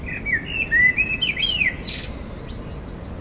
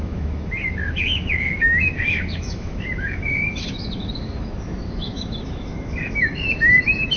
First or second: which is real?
first